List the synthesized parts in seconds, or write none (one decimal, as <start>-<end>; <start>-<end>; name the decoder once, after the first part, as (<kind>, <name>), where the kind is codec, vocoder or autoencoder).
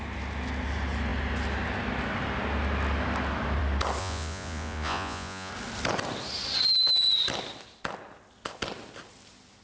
4.0-5.5 (vocoder, Vocos)